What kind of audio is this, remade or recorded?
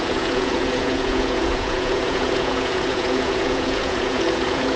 remade